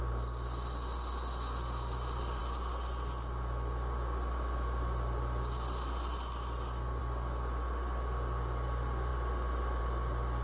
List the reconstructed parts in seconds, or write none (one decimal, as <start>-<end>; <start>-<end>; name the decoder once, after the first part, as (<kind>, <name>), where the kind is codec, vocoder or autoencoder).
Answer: none